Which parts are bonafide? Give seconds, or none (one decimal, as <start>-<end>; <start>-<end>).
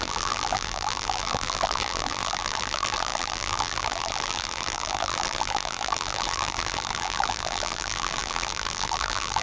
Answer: none